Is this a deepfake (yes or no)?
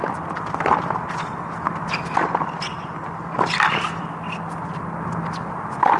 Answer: no